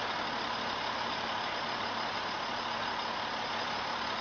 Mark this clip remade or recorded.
recorded